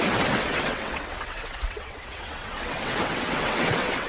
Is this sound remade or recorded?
remade